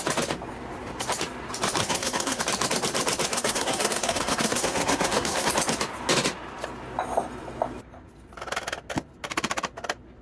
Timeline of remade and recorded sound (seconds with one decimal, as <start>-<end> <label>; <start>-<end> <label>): 0.0-1.8 recorded; 1.8-2.4 remade; 2.4-3.3 recorded; 3.3-5.5 remade; 5.5-10.2 recorded